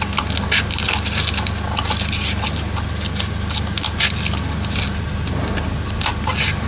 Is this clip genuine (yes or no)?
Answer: yes